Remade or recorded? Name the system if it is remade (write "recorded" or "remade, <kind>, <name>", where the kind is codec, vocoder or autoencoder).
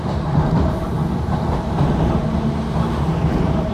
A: remade, vocoder, BigVGAN v2